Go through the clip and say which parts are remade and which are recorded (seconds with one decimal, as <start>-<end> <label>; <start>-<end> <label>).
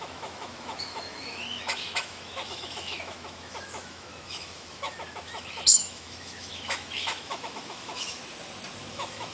0.0-8.2 remade; 8.2-8.9 recorded; 8.9-9.3 remade